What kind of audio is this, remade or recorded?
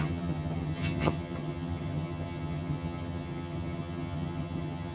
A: remade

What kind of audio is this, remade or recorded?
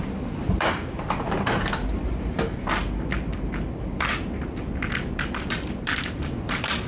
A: remade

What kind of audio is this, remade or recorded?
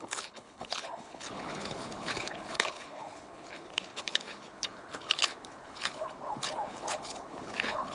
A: remade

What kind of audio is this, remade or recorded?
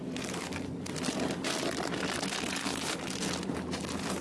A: recorded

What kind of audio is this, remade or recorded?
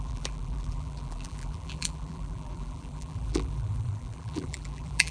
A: remade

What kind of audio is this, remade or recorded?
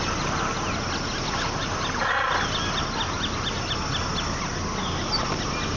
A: recorded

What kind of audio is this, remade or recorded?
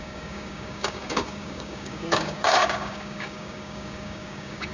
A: remade